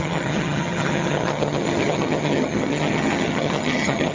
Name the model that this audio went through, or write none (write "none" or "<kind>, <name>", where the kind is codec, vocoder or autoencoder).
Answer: vocoder, HiFi-GAN